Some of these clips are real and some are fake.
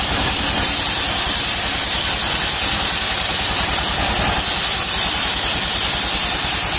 real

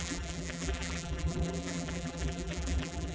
fake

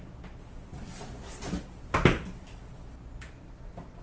real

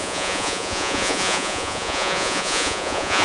fake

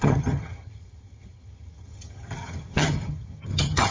fake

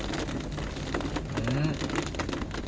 real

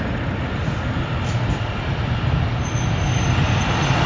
real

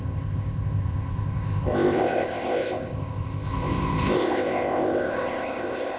fake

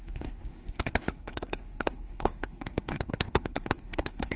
fake